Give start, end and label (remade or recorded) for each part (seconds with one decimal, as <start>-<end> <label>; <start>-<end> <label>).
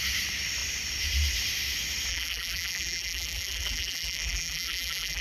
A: 0.0-2.1 recorded; 2.1-5.2 remade